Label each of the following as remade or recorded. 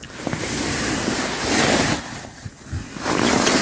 recorded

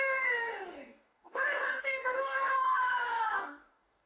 remade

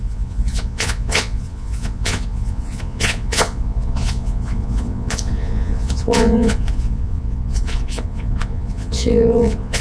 remade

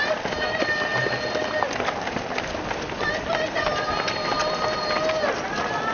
recorded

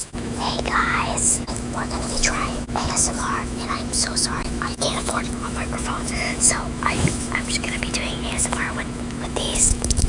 remade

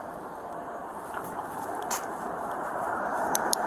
remade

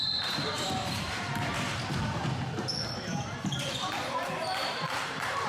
remade